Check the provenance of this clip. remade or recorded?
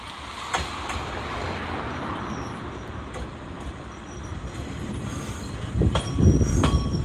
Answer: recorded